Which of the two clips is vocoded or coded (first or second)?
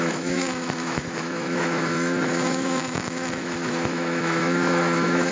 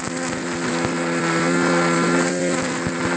first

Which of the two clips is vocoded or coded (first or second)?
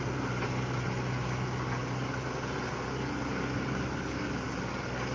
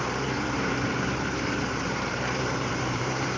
second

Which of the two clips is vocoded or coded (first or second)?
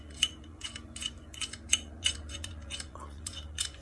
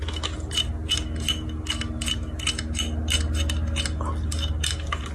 first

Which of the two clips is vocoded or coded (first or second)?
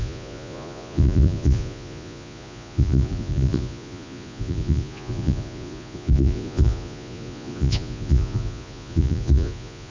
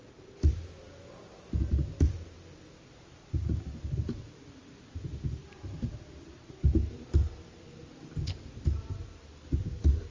first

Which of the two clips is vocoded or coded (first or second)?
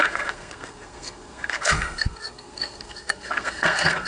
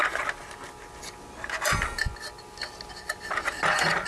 first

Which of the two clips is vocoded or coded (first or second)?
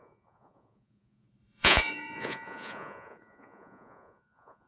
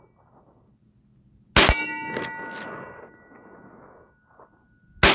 first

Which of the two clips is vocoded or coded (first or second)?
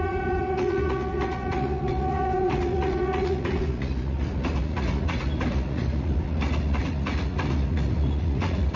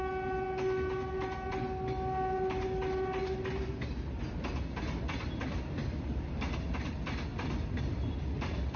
first